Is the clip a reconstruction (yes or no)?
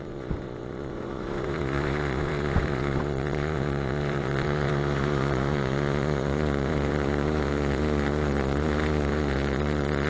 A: yes